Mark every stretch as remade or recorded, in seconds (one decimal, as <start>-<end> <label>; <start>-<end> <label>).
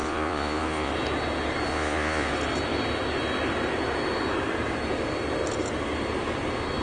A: 0.0-0.9 remade; 0.9-1.7 recorded; 1.7-2.3 remade; 2.3-6.8 recorded